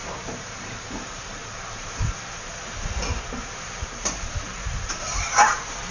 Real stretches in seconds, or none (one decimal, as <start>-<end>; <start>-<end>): none